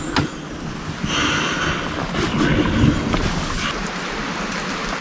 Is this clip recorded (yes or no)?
yes